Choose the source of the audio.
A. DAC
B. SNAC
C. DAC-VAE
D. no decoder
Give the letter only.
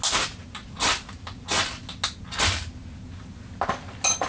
D